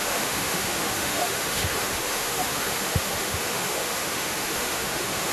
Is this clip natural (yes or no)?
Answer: no